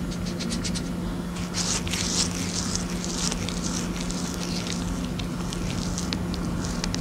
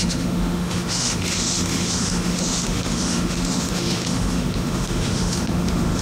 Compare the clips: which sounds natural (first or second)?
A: first